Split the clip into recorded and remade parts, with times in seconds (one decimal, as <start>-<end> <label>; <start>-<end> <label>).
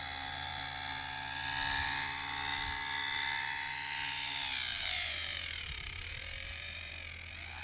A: 0.0-4.7 recorded; 4.7-6.9 remade; 6.9-7.6 recorded